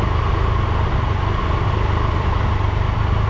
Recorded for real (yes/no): yes